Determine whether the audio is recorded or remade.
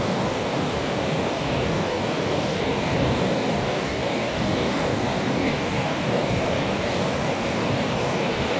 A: remade